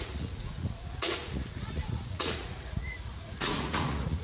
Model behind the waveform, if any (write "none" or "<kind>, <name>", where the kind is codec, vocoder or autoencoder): vocoder, Vocos